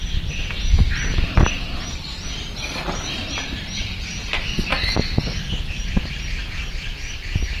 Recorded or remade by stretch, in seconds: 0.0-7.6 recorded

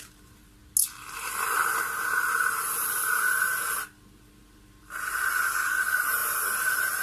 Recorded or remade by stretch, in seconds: 0.0-6.2 recorded; 6.2-7.0 remade

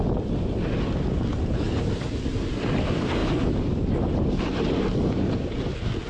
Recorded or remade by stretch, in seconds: 0.0-3.2 recorded; 3.2-4.6 remade; 4.6-6.1 recorded

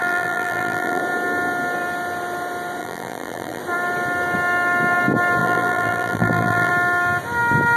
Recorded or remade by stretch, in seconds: 0.0-1.0 remade; 1.0-2.8 recorded; 2.8-3.6 remade; 3.6-5.4 recorded; 5.4-6.7 remade; 6.7-7.8 recorded